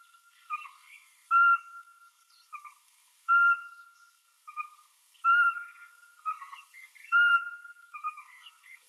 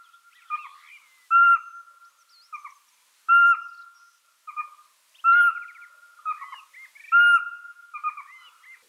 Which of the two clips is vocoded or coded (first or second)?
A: first